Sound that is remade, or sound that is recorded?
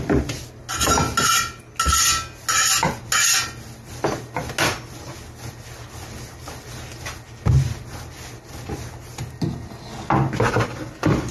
recorded